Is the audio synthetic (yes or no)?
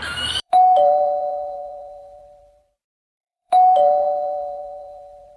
yes